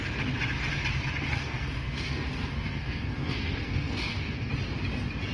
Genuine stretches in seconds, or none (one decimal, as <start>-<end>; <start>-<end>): 0.0-1.3; 4.5-5.3